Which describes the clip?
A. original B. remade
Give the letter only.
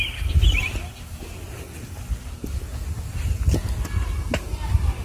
A